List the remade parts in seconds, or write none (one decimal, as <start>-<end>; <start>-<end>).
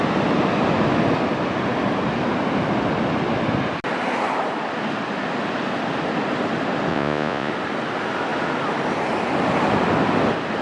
6.9-7.5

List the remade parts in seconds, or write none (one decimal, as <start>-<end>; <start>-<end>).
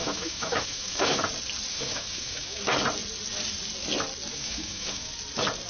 0.0-1.2; 1.7-2.6; 4.3-5.1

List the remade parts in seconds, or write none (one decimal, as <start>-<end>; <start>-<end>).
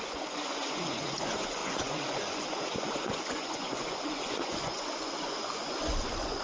0.0-6.4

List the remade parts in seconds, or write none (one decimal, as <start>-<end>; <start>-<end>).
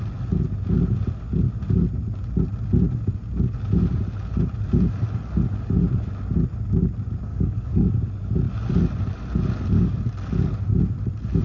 7.3-7.9